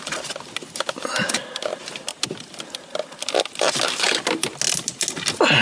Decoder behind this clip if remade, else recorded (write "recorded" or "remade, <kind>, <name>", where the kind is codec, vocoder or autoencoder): recorded